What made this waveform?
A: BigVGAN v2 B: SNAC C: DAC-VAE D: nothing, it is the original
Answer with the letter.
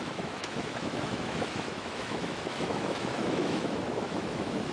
C